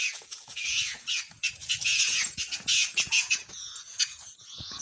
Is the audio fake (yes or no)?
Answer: yes